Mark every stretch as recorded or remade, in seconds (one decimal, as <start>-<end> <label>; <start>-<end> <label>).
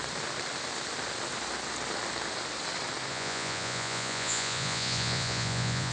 0.0-3.1 recorded; 3.1-5.9 remade